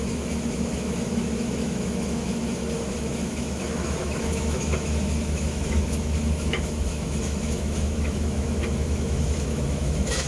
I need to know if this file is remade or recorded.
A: remade